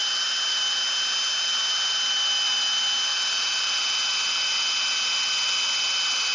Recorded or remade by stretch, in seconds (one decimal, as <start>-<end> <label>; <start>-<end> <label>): 0.0-6.3 recorded